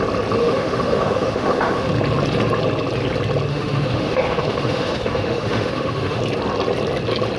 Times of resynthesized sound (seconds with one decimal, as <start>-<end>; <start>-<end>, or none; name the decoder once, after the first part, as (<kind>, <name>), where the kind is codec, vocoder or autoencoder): 0.4-1.9 (autoencoder, DAC-VAE); 3.5-6.2

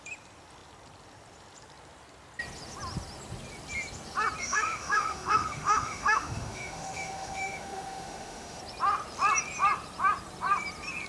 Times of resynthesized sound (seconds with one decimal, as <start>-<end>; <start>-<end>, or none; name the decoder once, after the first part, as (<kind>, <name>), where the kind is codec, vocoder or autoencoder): 4.4-8.6 (autoencoder, DAC-VAE)

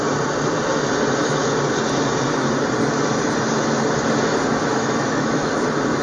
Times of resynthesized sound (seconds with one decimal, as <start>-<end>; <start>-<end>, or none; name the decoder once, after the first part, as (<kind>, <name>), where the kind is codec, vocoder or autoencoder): 4.7-5.5 (autoencoder, DAC-VAE)

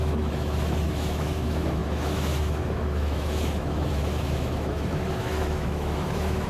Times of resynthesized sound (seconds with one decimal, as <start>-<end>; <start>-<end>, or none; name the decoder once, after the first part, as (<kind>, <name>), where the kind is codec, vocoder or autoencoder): 0.0-6.5 (autoencoder, DAC-VAE)

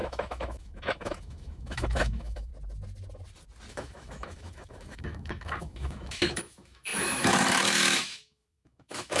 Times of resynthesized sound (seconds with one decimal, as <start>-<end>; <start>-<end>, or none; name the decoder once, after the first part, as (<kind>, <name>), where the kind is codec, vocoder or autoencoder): 0.0-2.5 (autoencoder, DAC-VAE); 3.7-9.2

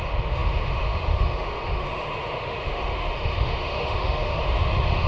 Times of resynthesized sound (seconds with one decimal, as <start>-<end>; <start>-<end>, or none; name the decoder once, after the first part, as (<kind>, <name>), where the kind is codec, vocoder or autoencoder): 0.0-5.1 (autoencoder, DAC-VAE)

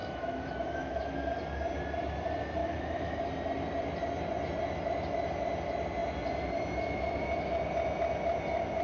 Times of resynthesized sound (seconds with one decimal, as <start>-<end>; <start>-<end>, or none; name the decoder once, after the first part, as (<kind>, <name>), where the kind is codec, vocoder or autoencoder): 0.0-1.1 (autoencoder, DAC-VAE); 2.6-3.2

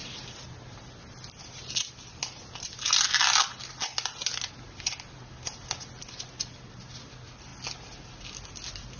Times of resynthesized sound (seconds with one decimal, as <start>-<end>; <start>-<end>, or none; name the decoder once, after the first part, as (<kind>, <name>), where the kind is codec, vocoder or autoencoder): none